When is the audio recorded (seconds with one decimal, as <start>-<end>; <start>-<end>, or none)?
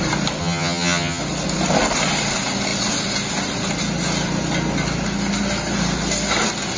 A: 0.0-0.4; 1.2-6.8